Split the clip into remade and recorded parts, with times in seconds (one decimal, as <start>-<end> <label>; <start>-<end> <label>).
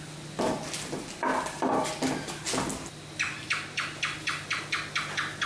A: 0.0-5.5 recorded